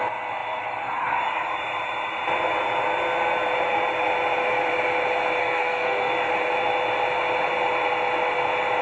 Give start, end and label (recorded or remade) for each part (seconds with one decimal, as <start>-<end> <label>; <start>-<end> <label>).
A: 0.0-5.4 recorded; 5.4-6.1 remade; 6.1-8.8 recorded